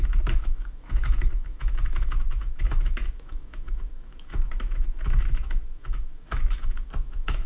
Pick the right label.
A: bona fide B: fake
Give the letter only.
B